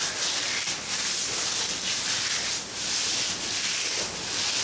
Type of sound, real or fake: real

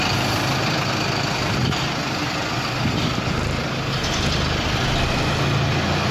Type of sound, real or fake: real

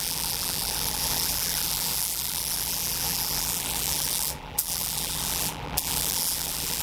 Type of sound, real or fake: fake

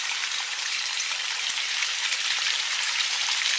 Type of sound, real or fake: fake